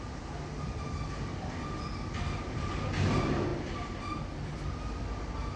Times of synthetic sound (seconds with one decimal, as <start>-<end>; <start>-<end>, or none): none